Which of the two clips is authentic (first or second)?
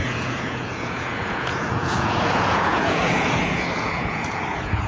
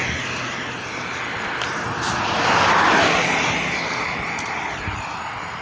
second